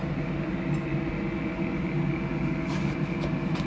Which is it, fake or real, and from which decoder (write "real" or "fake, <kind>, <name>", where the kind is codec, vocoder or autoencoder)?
real